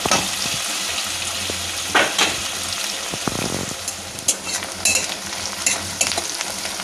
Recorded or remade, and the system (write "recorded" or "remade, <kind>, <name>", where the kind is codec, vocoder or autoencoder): recorded